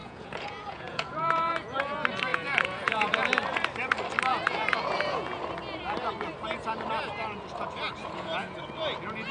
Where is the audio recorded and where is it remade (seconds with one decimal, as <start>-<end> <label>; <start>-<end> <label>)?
0.0-1.8 remade; 1.8-2.3 recorded; 2.3-3.3 remade; 3.3-4.3 recorded; 4.3-5.4 remade; 5.4-8.0 recorded; 8.0-8.6 remade; 8.6-9.3 recorded